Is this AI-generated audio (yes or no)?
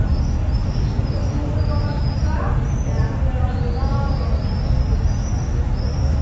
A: no